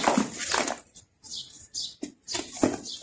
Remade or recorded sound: recorded